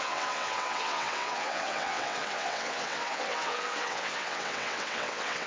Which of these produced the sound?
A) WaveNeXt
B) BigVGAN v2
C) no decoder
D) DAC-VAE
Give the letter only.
A